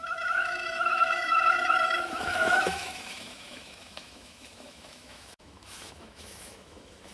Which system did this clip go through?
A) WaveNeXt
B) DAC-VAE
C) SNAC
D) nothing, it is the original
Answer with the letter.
B